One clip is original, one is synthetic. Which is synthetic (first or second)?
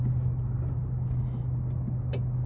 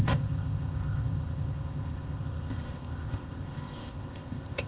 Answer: second